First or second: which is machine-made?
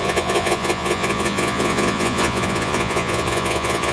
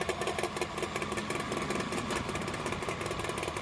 first